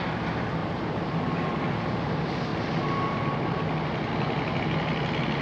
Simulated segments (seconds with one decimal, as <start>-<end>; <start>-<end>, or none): 0.6-1.2